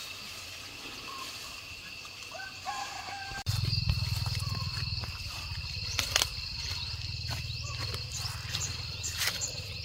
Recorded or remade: remade